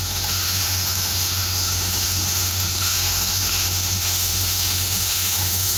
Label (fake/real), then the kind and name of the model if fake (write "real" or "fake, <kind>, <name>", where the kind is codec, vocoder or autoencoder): fake, autoencoder, DAC-VAE